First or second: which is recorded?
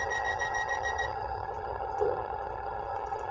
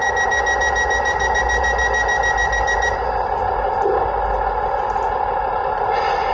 second